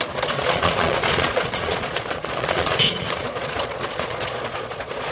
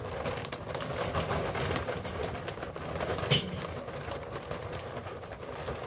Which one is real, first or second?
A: second